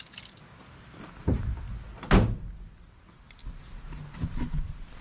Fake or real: real